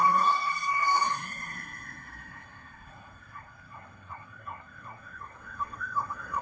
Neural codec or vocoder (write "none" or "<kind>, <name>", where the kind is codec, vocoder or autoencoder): codec, SNAC